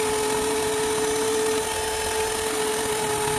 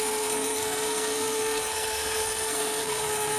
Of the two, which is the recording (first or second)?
first